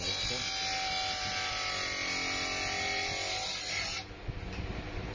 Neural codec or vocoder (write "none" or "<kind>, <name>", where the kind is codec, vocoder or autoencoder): none